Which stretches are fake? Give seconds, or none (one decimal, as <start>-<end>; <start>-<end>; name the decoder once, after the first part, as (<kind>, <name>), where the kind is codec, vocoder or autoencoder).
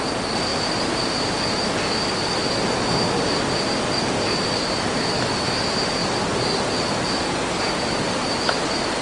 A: 0.0-0.5 (vocoder, BigVGAN v2); 4.3-6.0; 7.7-9.0